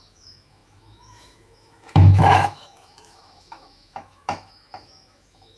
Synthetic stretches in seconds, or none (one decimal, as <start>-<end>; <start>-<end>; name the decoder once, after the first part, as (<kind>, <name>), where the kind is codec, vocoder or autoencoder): 0.0-5.6 (autoencoder, DAC-VAE)